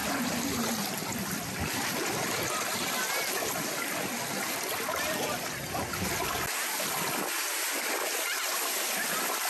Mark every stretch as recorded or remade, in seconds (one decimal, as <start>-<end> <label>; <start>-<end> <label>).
0.0-9.5 recorded